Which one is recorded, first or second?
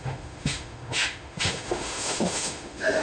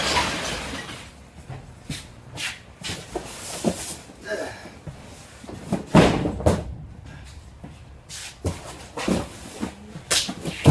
second